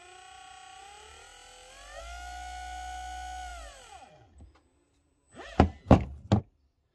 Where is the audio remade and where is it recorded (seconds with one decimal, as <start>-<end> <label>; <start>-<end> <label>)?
0.0-6.9 recorded